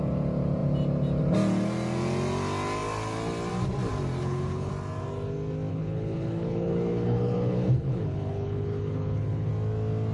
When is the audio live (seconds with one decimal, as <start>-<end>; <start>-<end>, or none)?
0.0-4.2; 4.7-5.7; 9.5-10.1